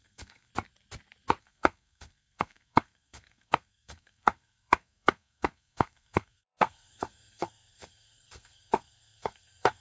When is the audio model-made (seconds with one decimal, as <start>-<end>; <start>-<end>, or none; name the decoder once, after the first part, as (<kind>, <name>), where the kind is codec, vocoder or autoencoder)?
0.0-0.5 (codec, SNAC); 1.4-9.8